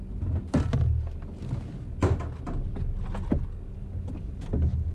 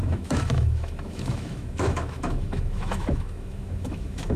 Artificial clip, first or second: second